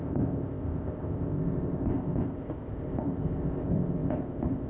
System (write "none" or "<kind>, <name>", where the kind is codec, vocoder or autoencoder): codec, ZipCodec